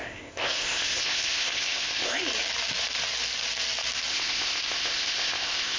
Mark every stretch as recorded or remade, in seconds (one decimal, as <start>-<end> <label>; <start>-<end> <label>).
0.0-2.2 remade; 2.2-4.1 recorded; 4.1-5.8 remade